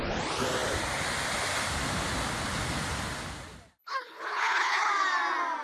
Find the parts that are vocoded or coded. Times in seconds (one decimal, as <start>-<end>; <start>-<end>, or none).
3.8-4.9